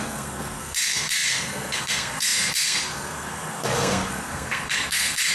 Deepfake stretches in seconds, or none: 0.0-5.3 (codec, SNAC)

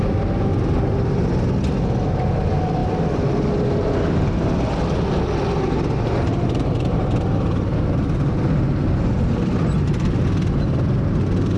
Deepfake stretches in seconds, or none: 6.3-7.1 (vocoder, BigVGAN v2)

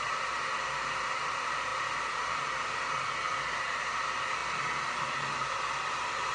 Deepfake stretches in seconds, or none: none